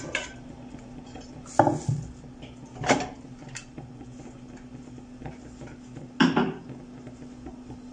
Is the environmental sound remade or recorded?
recorded